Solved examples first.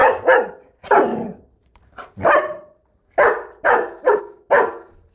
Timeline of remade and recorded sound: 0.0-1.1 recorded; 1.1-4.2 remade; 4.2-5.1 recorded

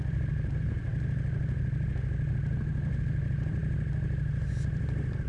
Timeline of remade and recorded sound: 0.0-0.9 remade; 0.9-2.5 recorded; 2.5-3.6 remade; 3.6-4.5 recorded; 4.5-5.3 remade

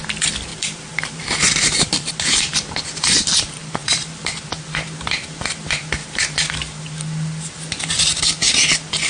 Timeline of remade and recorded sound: 0.0-0.5 recorded; 0.5-2.1 remade; 2.1-3.8 recorded; 3.8-4.4 remade; 4.4-9.1 recorded

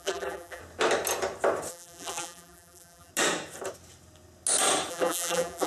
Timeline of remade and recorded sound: 0.0-0.6 remade; 0.6-1.7 recorded; 1.7-3.1 remade; 3.1-4.9 recorded; 4.9-5.7 remade